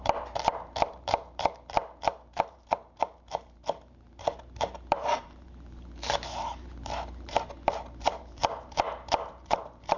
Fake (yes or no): yes